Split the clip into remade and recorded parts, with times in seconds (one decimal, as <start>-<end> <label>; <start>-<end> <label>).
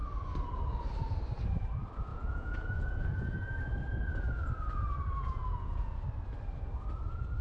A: 0.0-2.1 recorded; 2.1-3.6 remade; 3.6-5.2 recorded; 5.2-6.0 remade; 6.0-7.4 recorded